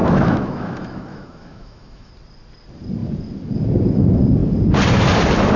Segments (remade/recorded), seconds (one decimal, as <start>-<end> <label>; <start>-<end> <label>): 0.0-2.1 remade; 2.1-5.6 recorded